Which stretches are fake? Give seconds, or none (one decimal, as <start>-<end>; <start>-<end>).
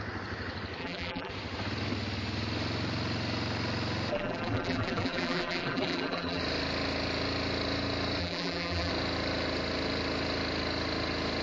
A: 0.8-1.3; 4.1-6.4; 8.2-8.9